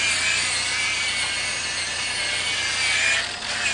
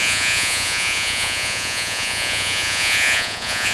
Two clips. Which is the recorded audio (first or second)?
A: first